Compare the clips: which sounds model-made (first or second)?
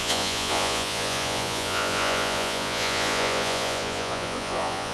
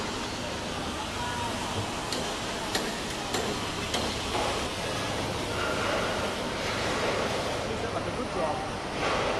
first